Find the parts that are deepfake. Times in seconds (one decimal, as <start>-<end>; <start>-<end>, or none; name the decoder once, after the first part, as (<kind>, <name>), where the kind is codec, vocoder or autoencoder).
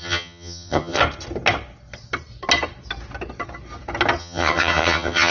0.0-1.0 (vocoder, HiFi-GAN); 4.2-5.3